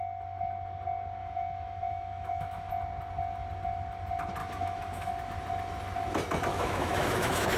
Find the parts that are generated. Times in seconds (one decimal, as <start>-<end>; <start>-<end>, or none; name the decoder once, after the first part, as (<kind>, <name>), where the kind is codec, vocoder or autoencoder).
1.2-2.7 (autoencoder, DAC-VAE); 4.4-5.1; 6.5-7.6